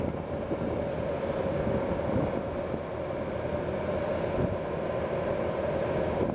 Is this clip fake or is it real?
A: real